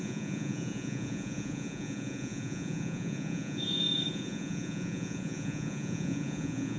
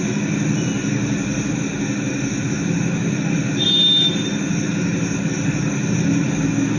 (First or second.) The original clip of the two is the second